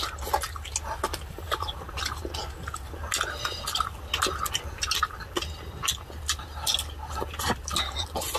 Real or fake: real